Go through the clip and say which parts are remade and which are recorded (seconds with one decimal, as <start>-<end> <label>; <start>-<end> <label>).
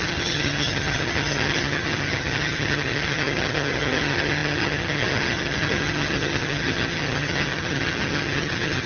0.0-8.9 remade